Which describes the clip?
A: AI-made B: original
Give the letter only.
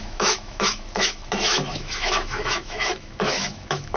A